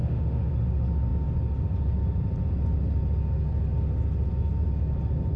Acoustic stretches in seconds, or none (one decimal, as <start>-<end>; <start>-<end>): 0.5-5.4